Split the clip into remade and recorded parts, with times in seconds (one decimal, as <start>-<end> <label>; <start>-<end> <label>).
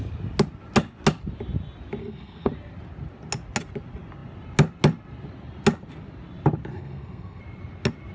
0.0-2.0 recorded; 2.0-2.5 remade; 2.5-6.7 recorded; 6.7-7.4 remade; 7.4-8.1 recorded